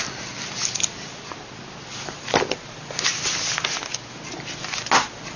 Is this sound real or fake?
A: real